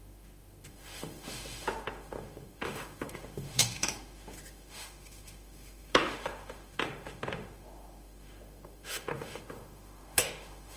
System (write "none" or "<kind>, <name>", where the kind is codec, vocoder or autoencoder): autoencoder, DAC-VAE